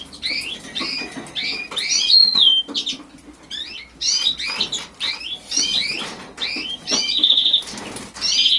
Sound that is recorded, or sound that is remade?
recorded